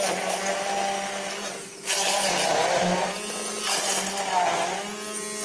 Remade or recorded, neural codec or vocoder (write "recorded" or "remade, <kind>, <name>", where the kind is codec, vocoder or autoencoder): recorded